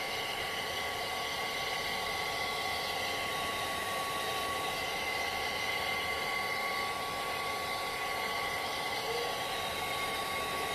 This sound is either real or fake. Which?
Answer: real